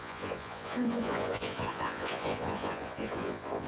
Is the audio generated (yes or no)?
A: yes